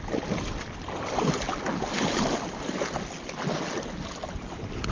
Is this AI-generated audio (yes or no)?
no